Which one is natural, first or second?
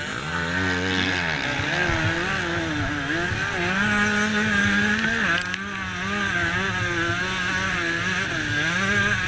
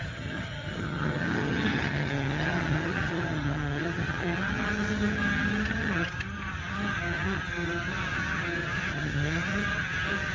first